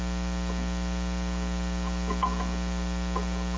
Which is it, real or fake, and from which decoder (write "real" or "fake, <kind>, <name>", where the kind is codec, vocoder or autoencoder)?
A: real